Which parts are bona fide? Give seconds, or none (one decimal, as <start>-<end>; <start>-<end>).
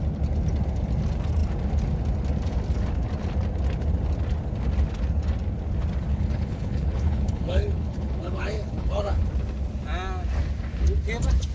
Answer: 0.0-6.1; 9.3-11.5